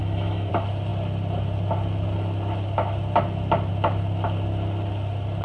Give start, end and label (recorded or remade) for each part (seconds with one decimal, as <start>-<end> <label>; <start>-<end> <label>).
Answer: 0.0-0.5 remade; 0.5-5.4 recorded